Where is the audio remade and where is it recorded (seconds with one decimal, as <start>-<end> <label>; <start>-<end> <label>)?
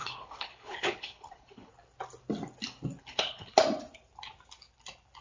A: 0.0-1.7 remade; 1.7-3.0 recorded; 3.0-3.5 remade; 3.5-5.2 recorded